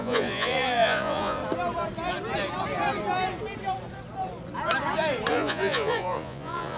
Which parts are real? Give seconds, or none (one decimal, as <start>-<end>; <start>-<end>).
1.4-5.3